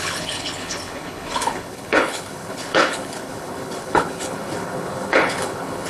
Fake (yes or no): yes